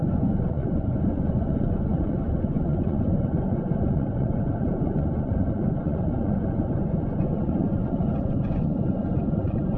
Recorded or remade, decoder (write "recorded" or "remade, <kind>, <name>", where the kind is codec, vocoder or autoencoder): remade, vocoder, Vocos